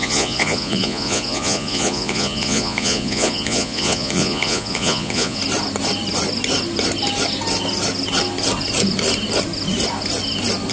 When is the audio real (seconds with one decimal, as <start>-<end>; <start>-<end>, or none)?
5.4-10.7